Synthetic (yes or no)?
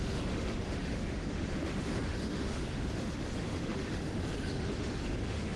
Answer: yes